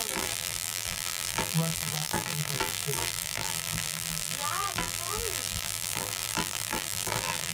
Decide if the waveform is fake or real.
fake